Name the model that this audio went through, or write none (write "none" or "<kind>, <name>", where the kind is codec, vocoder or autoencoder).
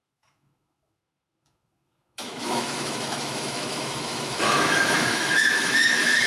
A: autoencoder, DAC-VAE